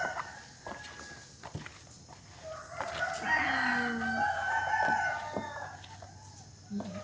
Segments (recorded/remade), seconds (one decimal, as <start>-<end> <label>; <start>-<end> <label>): 0.0-7.0 recorded